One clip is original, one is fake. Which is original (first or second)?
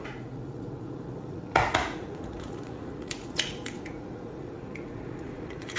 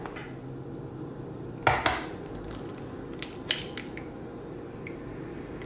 second